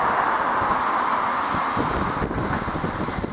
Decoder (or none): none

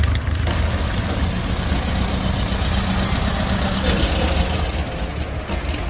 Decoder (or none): none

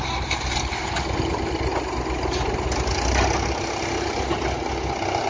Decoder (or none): none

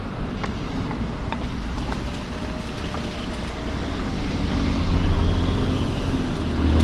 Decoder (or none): none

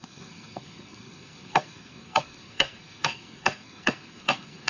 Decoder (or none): codec, SNAC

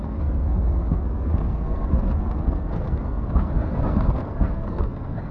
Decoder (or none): codec, SNAC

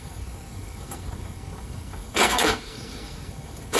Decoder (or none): codec, SNAC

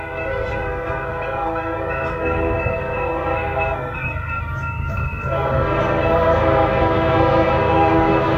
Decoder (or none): codec, SNAC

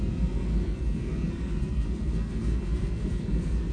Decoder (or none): codec, SNAC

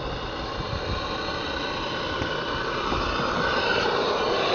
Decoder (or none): none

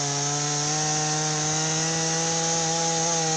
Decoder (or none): none